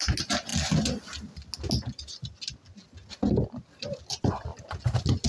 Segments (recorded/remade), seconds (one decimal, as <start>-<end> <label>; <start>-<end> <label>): 0.0-5.3 recorded